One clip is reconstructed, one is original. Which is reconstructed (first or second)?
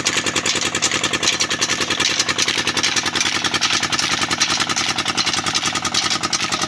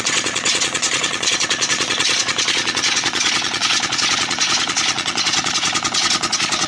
second